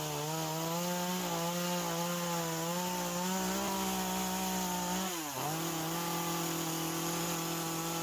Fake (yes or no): no